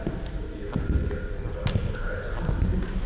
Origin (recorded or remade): recorded